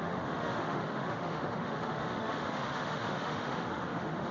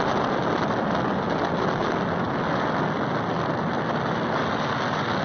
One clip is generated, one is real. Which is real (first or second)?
second